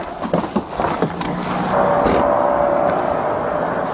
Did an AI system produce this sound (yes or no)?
no